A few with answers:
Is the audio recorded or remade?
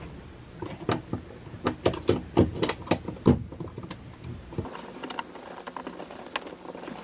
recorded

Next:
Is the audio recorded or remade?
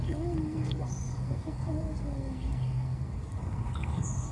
remade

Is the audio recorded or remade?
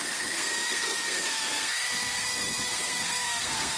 remade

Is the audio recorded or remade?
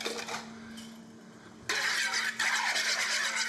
recorded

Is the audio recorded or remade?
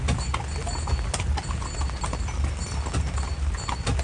recorded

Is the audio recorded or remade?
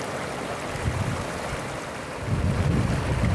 recorded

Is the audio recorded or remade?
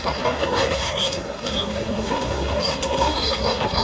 remade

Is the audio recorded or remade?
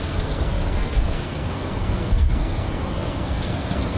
remade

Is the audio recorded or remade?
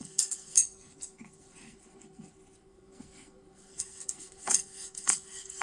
remade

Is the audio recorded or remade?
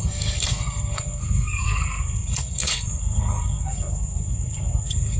remade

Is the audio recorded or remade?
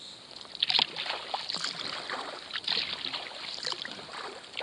recorded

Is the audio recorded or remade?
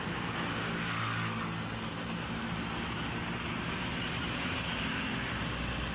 recorded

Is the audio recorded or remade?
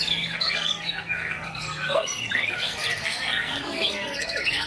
remade